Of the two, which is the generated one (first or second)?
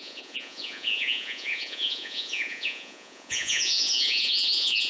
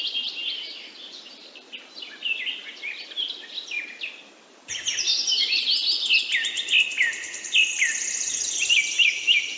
first